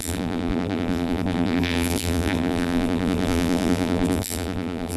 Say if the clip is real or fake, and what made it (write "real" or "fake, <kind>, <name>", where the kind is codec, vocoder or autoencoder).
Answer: fake, vocoder, BigVGAN v2